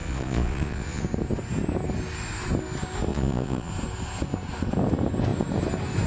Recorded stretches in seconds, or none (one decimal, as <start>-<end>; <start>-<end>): 1.0-3.1; 3.7-6.1